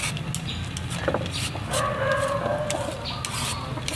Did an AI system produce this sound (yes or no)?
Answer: no